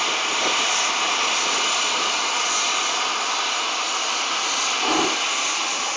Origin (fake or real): real